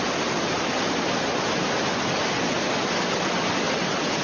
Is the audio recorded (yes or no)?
yes